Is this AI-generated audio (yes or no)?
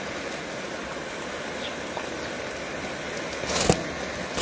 no